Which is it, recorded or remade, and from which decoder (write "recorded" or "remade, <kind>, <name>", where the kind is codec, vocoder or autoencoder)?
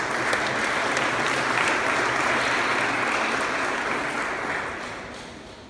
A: recorded